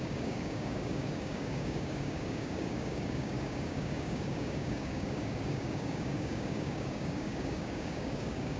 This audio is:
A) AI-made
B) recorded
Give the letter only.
A